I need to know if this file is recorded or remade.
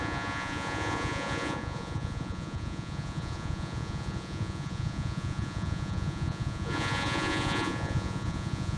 remade